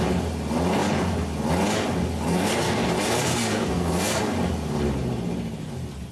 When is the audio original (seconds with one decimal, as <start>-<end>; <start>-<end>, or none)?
0.0-2.3; 2.9-3.3; 4.2-6.1